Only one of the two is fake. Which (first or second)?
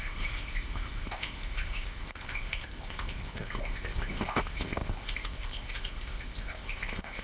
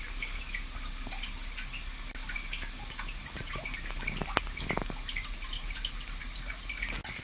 first